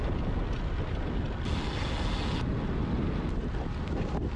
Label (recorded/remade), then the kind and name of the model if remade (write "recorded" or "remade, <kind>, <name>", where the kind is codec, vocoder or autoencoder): recorded